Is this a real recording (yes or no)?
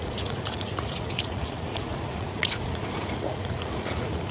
no